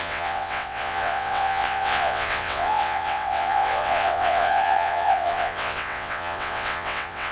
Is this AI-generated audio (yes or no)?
yes